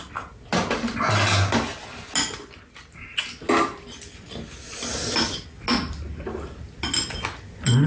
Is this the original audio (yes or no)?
yes